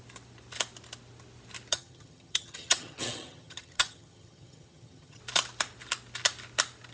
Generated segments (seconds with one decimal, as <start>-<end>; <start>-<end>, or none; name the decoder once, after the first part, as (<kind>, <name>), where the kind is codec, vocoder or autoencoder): 1.7-5.2 (vocoder, HiFi-GAN)